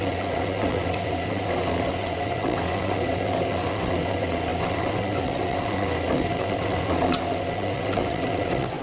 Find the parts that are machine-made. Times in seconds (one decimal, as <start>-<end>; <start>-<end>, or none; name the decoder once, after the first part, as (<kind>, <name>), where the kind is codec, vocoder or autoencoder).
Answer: 0.0-8.8 (vocoder, WaveNeXt)